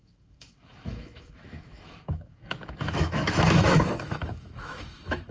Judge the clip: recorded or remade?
remade